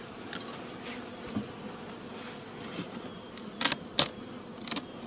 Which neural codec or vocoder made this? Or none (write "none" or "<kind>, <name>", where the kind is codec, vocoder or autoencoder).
none